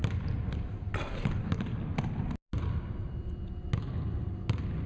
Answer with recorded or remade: recorded